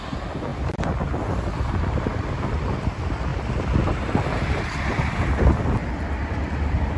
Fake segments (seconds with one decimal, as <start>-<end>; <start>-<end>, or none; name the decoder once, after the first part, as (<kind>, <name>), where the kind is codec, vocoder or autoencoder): none